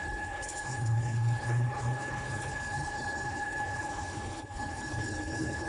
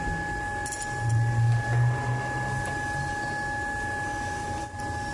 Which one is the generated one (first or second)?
first